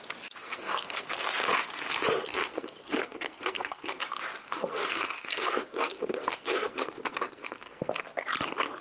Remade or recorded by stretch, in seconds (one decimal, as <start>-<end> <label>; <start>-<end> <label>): 0.0-0.4 recorded; 0.4-1.1 remade; 1.1-2.3 recorded; 2.3-4.0 remade; 4.0-4.4 recorded; 4.4-7.9 remade; 7.9-8.8 recorded